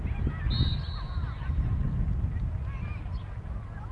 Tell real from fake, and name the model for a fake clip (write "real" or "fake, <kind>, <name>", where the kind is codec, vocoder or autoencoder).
real